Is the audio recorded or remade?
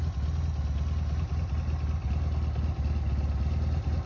recorded